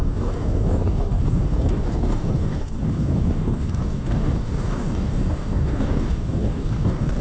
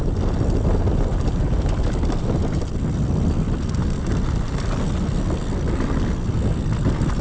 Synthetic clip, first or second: first